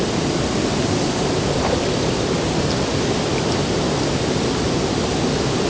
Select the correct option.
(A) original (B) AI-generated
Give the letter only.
A